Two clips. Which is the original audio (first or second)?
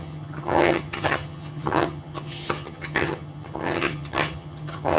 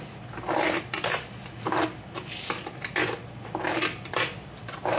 second